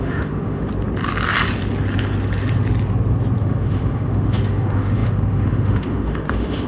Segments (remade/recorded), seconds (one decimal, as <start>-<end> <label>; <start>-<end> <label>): 0.0-0.7 remade; 0.7-3.4 recorded; 3.4-6.7 remade